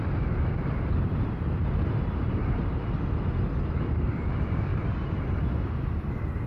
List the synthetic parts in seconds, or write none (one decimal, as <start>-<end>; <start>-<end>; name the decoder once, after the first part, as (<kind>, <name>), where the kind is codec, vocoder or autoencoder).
none